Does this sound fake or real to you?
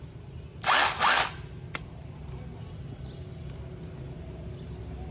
real